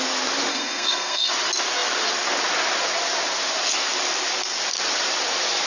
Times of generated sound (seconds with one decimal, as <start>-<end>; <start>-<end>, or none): 0.5-1.3